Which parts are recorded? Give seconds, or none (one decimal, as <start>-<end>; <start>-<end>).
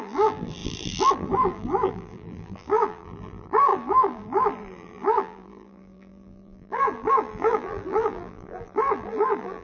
none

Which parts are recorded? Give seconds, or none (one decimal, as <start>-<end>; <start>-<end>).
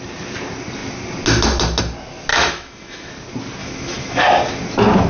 0.0-2.3; 3.1-3.6; 4.2-5.1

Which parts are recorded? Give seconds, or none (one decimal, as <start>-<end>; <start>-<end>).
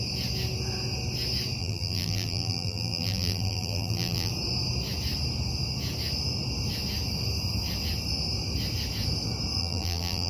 0.0-1.6; 4.3-9.6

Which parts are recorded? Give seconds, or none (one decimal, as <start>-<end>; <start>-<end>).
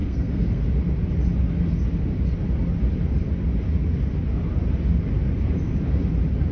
0.6-6.5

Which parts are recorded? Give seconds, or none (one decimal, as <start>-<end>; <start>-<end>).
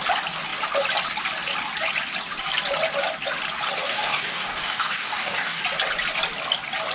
0.0-3.8; 5.6-6.9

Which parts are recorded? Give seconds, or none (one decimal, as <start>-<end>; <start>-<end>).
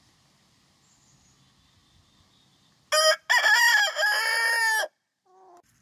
0.0-5.8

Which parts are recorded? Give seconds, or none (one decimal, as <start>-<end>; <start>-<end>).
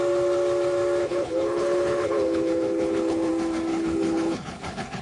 0.0-1.0; 3.3-3.7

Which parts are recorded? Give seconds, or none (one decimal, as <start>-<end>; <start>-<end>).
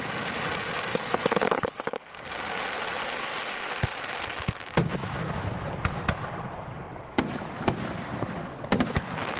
0.0-0.9; 2.1-9.4